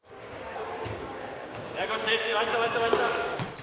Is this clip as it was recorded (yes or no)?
no